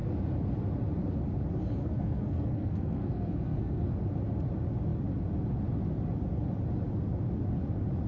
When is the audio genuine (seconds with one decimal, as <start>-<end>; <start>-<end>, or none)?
0.0-1.8; 3.9-8.1